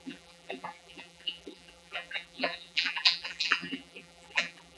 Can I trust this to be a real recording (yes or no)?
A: no